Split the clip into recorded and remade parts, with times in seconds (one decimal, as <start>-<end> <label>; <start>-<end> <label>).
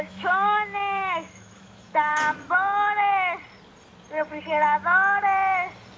0.0-2.1 remade; 2.1-6.0 recorded